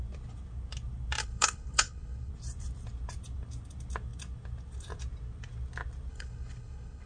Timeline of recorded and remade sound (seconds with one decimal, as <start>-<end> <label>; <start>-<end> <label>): 0.0-1.2 recorded; 1.2-2.3 remade; 2.3-6.1 recorded; 6.1-7.1 remade